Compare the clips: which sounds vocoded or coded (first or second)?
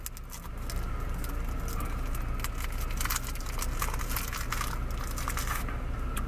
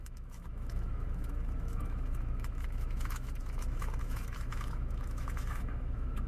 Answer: second